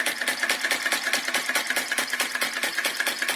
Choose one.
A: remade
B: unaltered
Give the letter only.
B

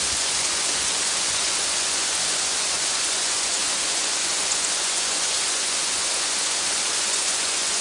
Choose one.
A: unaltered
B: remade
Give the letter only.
B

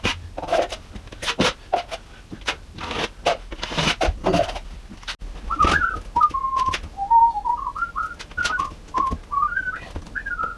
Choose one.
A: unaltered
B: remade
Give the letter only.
A